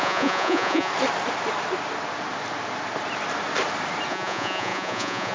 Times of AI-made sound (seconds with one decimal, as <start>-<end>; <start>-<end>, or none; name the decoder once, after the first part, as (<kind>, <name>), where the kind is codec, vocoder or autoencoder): 0.0-0.9 (vocoder, Vocos); 4.1-5.3